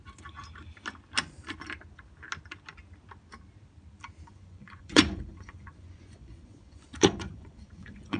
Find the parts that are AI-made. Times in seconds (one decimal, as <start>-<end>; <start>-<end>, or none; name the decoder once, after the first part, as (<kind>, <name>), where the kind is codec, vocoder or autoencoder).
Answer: 4.3-8.2 (vocoder, Vocos)